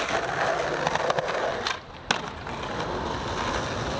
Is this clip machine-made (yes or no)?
no